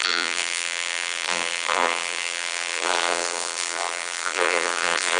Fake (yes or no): yes